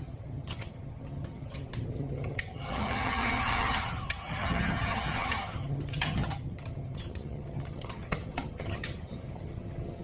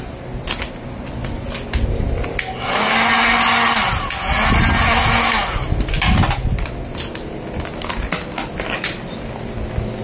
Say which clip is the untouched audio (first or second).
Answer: second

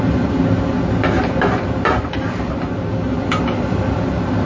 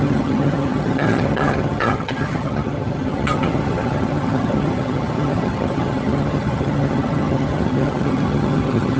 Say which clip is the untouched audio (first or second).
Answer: first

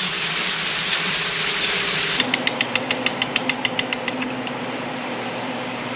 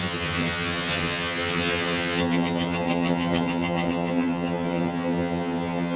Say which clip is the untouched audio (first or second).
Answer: first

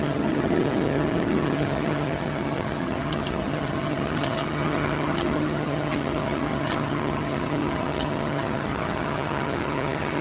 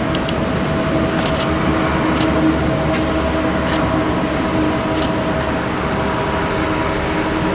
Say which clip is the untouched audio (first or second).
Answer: second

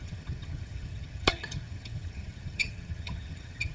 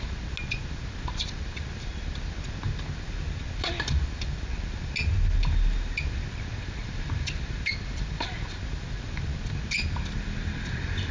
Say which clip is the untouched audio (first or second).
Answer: second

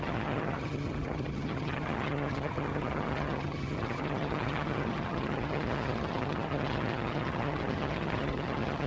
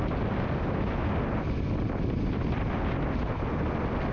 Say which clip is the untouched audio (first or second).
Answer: second